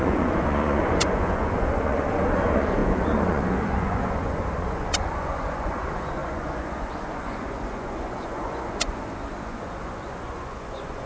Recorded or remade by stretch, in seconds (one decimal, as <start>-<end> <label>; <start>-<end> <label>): 0.0-11.1 remade